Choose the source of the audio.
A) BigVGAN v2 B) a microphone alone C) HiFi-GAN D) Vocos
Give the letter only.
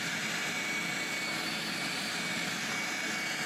B